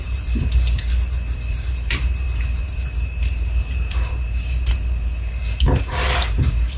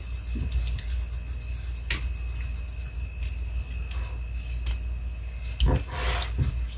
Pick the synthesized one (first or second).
first